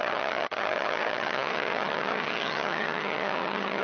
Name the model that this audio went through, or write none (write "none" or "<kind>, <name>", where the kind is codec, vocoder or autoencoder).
vocoder, HiFi-GAN